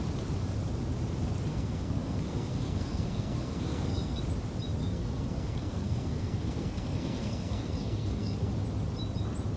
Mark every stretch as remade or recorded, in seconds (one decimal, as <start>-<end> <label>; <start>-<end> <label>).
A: 0.0-1.5 recorded; 1.5-4.2 remade; 4.2-4.8 recorded; 4.8-8.5 remade; 8.5-9.6 recorded